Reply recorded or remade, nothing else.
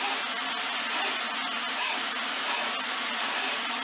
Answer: recorded